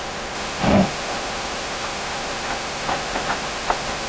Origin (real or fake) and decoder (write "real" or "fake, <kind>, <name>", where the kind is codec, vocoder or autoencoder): fake, autoencoder, DAC-VAE